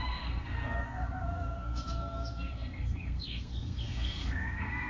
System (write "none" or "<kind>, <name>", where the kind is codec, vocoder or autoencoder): codec, SNAC